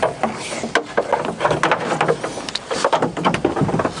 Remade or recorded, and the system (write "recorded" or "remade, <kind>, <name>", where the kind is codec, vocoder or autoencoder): recorded